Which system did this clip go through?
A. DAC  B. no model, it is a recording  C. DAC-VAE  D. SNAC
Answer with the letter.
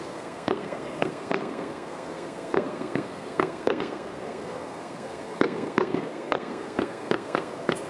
D